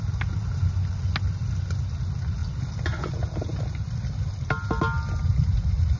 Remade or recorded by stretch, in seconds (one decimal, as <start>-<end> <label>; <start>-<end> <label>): 0.0-6.0 recorded